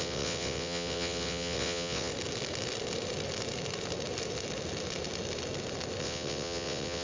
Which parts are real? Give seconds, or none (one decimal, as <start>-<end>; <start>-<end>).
2.1-6.0